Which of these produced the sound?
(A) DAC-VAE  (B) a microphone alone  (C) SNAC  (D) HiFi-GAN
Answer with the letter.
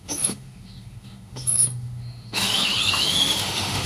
A